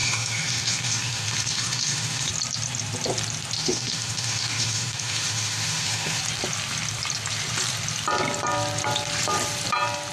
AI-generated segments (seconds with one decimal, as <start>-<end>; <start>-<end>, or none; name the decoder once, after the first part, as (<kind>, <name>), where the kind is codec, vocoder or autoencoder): 0.0-2.3 (autoencoder, DAC-VAE); 3.6-6.2